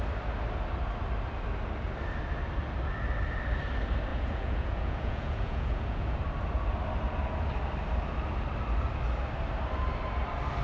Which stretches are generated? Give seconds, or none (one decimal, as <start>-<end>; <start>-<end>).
4.1-6.2